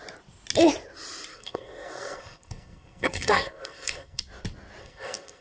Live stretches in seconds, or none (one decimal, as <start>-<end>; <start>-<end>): 0.0-1.3; 4.2-4.8